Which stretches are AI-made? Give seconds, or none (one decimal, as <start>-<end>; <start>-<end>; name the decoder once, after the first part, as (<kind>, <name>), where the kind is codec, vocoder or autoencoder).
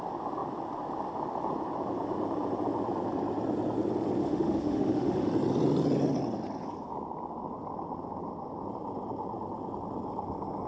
4.2-5.3 (autoencoder, DAC-VAE)